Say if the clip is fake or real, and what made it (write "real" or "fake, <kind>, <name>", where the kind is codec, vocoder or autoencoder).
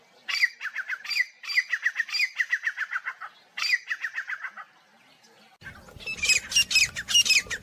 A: real